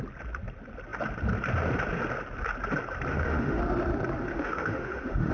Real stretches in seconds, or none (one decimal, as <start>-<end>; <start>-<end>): 0.0-3.1; 3.6-4.3